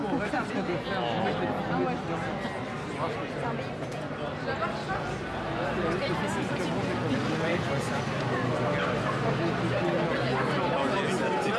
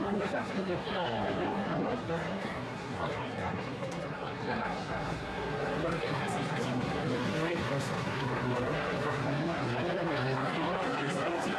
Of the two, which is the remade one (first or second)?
second